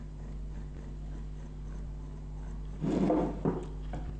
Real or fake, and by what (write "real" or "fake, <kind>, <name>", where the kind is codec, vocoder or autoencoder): real